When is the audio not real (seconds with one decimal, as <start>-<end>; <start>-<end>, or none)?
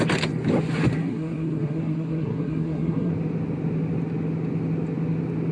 1.0-3.1